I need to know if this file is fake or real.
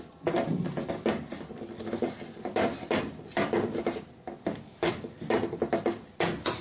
real